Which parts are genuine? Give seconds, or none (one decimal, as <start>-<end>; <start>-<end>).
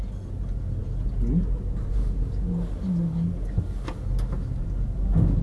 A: 0.0-5.4